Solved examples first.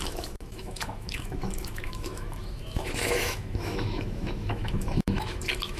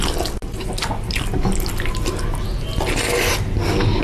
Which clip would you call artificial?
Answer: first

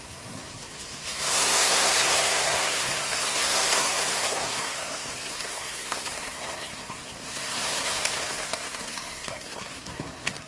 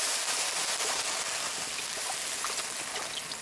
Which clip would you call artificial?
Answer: first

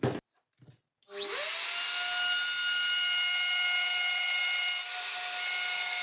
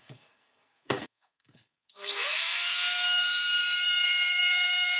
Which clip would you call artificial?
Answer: second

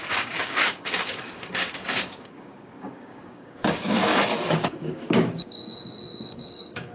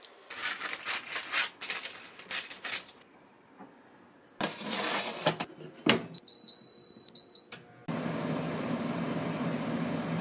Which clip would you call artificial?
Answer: first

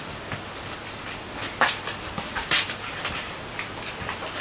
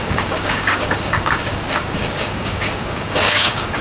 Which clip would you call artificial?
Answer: second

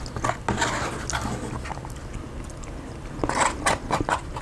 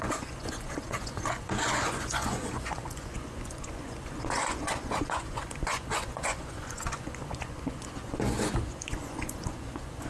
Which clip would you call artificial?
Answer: second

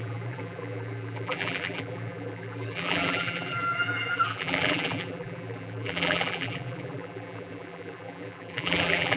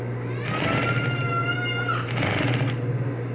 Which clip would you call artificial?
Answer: first